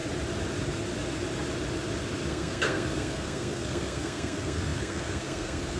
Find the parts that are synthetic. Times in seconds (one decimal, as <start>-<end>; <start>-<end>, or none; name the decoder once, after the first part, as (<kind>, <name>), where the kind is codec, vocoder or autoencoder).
2.3-5.8 (codec, SNAC)